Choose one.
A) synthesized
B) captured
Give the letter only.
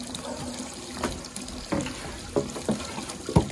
B